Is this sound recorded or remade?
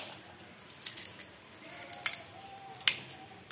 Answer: recorded